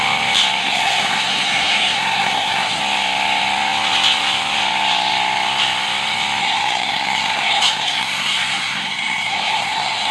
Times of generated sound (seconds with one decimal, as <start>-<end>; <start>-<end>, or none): 0.6-2.8; 6.4-10.1